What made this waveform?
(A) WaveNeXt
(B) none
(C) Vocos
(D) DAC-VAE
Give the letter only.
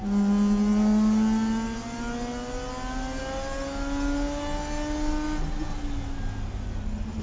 B